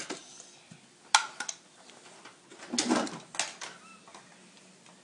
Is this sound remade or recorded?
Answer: recorded